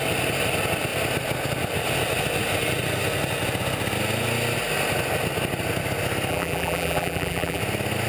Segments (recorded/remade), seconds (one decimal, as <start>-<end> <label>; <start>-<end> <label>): 0.0-6.3 recorded; 6.3-7.6 remade; 7.6-8.1 recorded